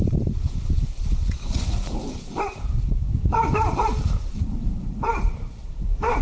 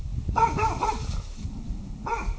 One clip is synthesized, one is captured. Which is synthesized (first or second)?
first